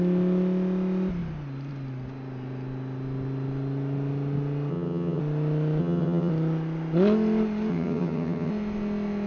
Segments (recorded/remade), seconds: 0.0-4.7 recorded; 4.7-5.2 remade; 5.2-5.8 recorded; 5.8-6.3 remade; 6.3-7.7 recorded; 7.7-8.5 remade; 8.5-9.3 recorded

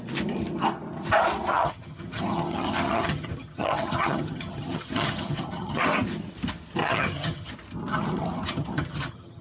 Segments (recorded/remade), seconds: 0.0-1.5 recorded; 1.5-5.8 remade; 5.8-6.8 recorded; 6.8-7.5 remade; 7.5-7.9 recorded; 7.9-9.4 remade

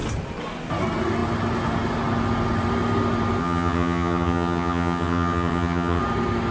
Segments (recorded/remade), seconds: 0.0-3.4 recorded; 3.4-6.0 remade; 6.0-6.5 recorded